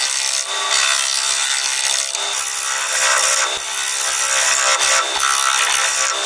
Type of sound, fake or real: real